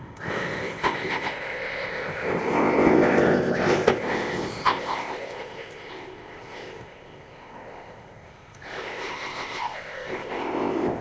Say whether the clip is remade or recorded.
remade